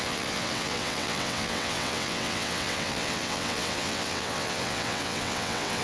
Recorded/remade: remade